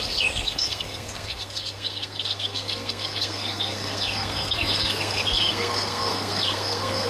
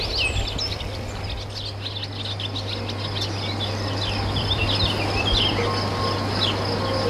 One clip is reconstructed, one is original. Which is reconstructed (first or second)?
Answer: first